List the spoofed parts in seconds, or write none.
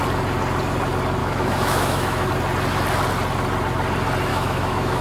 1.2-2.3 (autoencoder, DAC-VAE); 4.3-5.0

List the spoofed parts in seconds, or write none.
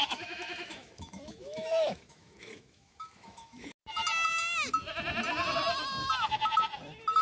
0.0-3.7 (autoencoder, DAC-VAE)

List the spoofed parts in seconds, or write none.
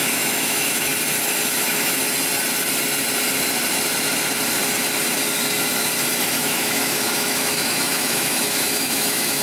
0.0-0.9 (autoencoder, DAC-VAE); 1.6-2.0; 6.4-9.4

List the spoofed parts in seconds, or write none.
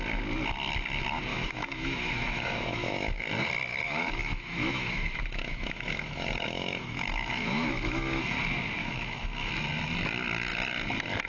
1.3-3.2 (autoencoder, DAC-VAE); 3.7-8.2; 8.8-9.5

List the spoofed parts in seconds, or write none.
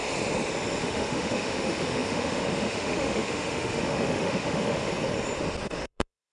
0.8-4.9 (autoencoder, DAC-VAE); 5.6-6.3